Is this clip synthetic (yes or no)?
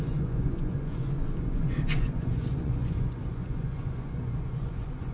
yes